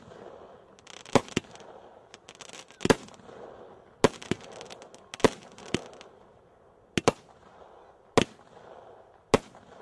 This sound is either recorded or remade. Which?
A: recorded